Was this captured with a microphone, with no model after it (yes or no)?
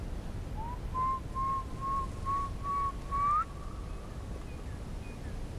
yes